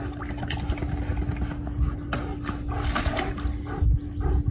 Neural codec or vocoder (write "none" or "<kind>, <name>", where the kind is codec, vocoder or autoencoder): none